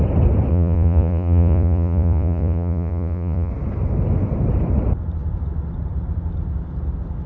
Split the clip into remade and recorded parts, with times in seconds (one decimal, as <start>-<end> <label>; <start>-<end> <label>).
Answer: 0.0-0.5 recorded; 0.5-3.5 remade; 3.5-7.3 recorded

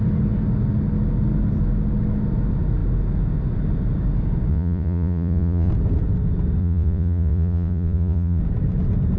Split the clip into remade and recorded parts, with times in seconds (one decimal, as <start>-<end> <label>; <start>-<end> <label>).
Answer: 0.0-4.5 recorded; 4.5-5.7 remade; 5.7-6.6 recorded; 6.6-8.4 remade; 8.4-9.2 recorded

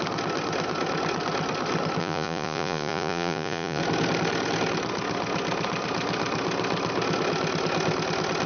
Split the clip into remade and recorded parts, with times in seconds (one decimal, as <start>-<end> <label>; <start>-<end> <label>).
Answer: 0.0-2.0 recorded; 2.0-3.8 remade; 3.8-8.5 recorded

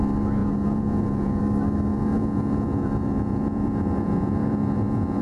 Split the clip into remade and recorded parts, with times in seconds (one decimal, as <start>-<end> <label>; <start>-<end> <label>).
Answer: 0.0-0.4 recorded; 0.4-1.4 remade; 1.4-1.9 recorded; 1.9-5.2 remade

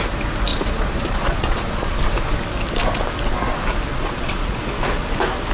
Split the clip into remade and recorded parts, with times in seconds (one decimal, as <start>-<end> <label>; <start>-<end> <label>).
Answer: 0.0-0.5 recorded; 0.5-2.0 remade; 2.0-3.9 recorded; 3.9-4.6 remade; 4.6-5.5 recorded